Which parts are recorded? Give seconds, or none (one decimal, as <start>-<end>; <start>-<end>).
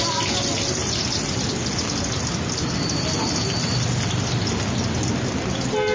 0.0-5.9